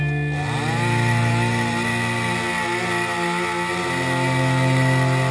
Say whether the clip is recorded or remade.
recorded